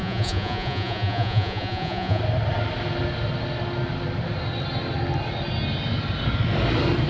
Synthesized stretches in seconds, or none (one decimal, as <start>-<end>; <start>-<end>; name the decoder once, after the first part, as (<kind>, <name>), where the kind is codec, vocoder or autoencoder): 0.0-2.2 (vocoder, Vocos)